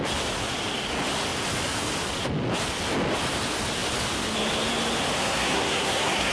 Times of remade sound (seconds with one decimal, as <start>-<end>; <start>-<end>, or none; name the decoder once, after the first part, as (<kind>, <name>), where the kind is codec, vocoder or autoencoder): 5.2-6.3 (codec, SNAC)